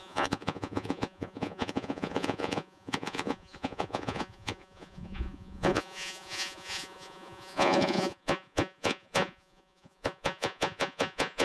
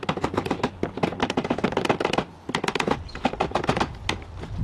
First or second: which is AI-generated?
first